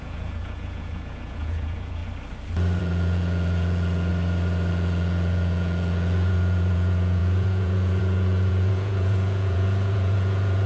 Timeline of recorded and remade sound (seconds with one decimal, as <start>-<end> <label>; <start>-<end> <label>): 0.0-2.0 remade; 2.0-2.8 recorded; 2.8-4.1 remade; 4.1-4.7 recorded; 4.7-10.7 remade